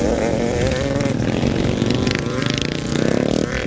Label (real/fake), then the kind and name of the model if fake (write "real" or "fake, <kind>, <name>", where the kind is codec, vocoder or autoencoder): real